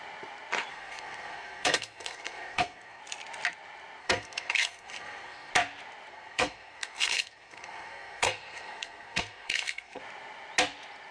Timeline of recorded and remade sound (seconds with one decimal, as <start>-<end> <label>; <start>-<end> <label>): 0.0-0.7 recorded; 0.7-3.0 remade; 3.0-4.0 recorded; 4.0-5.5 remade; 5.5-6.1 recorded; 6.1-10.0 remade; 10.0-11.1 recorded